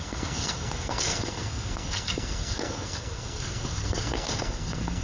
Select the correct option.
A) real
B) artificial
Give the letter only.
B